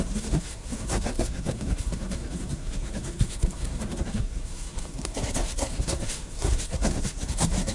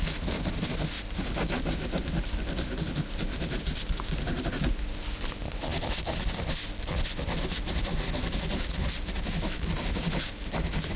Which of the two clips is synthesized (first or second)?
first